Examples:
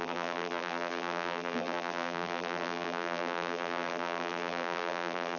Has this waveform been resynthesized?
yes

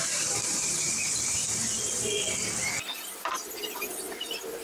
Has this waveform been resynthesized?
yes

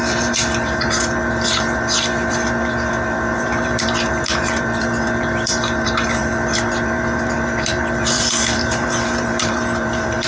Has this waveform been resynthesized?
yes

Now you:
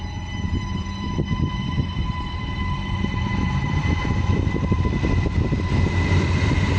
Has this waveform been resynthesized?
yes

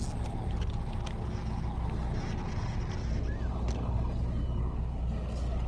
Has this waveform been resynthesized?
no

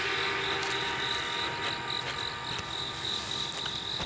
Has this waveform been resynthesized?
no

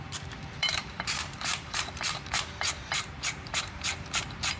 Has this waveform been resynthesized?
yes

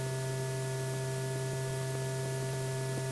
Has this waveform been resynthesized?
no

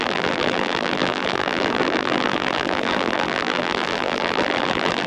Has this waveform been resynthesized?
yes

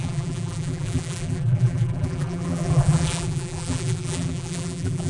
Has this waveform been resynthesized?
yes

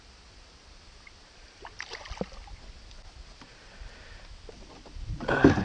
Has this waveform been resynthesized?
no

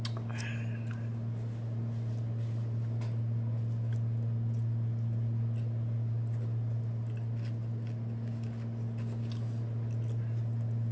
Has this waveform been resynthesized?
no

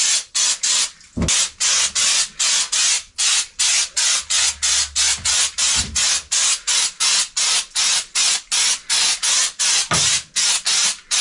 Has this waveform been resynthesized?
no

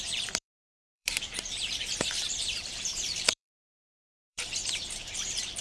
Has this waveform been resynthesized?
yes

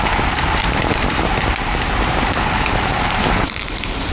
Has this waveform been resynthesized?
yes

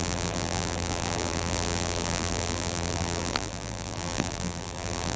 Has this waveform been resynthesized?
yes